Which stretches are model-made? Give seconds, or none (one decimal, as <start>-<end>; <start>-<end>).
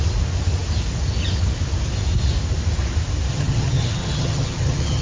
3.3-5.0